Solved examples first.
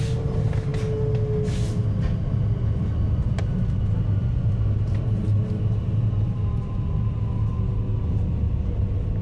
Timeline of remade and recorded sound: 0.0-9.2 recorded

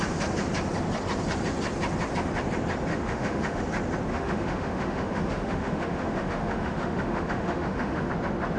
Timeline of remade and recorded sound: 0.0-2.9 recorded; 2.9-3.6 remade; 3.6-4.1 recorded; 4.1-8.1 remade; 8.1-8.6 recorded

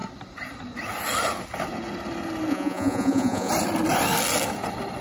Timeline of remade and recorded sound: 0.0-2.5 recorded; 2.5-3.5 remade; 3.5-5.0 recorded

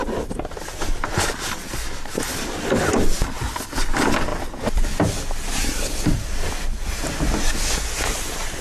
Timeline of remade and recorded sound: 0.0-4.3 recorded; 4.3-4.9 remade; 4.9-8.6 recorded

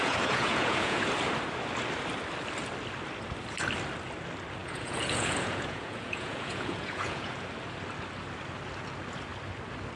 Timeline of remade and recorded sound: 0.0-1.0 remade; 1.0-4.6 recorded; 4.6-7.3 remade; 7.3-10.0 recorded

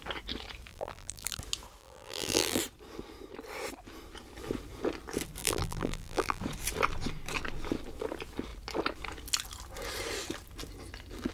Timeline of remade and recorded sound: 0.0-0.7 recorded; 0.7-1.4 remade; 1.4-1.8 recorded; 1.8-2.6 remade; 2.6-5.4 recorded; 5.4-6.4 remade; 6.4-11.3 recorded